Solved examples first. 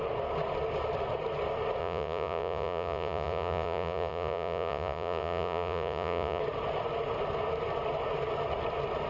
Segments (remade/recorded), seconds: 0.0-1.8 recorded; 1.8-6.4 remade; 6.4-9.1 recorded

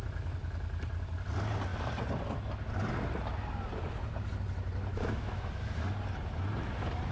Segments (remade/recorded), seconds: 0.0-4.9 recorded; 4.9-5.5 remade; 5.5-7.1 recorded

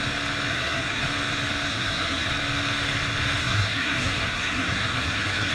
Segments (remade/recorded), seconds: 0.0-0.5 recorded; 0.5-1.0 remade; 1.0-1.7 recorded; 1.7-2.3 remade; 2.3-3.4 recorded; 3.4-5.5 remade